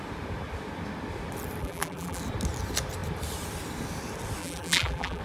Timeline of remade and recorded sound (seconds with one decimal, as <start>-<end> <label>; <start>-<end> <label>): 0.0-1.6 recorded; 1.6-2.2 remade; 2.2-4.4 recorded; 4.4-5.2 remade